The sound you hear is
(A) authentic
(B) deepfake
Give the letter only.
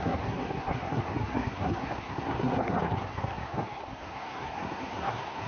B